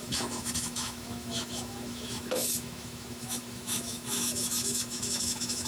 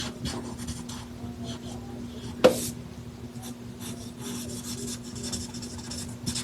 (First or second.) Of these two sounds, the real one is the second